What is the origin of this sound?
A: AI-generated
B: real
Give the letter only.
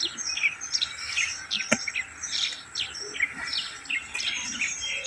B